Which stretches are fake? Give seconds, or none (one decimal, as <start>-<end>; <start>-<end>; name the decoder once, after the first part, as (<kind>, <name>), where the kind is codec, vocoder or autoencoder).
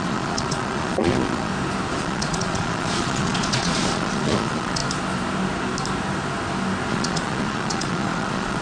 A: 0.0-1.5 (vocoder, Vocos); 2.0-4.8; 6.9-8.6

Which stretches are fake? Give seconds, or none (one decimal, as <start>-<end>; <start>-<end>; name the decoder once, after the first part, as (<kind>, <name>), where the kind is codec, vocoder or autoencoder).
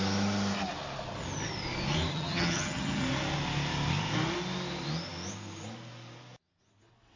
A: 2.1-3.0 (vocoder, HiFi-GAN)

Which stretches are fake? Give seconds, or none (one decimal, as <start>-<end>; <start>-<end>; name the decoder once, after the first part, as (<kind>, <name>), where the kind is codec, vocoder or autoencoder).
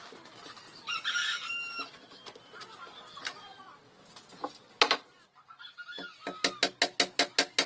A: none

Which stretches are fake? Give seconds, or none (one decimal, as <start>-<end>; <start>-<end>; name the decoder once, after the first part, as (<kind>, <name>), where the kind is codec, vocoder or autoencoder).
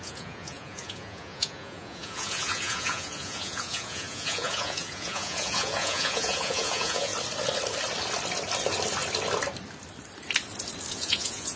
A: 0.0-7.1 (vocoder, Vocos); 10.9-11.6